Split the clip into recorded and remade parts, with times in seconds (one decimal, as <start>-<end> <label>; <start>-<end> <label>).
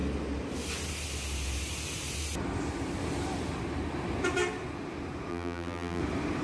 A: 0.0-5.3 recorded; 5.3-6.0 remade; 6.0-6.4 recorded